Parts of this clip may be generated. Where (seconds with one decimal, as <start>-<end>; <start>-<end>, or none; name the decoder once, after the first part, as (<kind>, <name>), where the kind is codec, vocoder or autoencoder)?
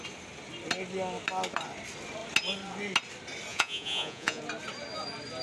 3.5-4.4 (vocoder, Vocos)